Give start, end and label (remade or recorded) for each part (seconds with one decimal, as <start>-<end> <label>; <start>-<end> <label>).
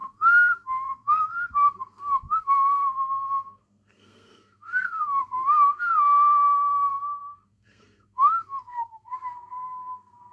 0.0-5.9 remade; 5.9-6.7 recorded; 6.7-10.3 remade